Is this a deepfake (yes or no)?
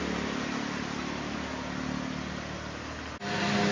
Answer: no